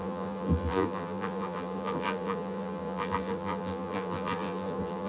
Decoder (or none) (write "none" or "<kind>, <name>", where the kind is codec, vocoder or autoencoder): vocoder, BigVGAN v2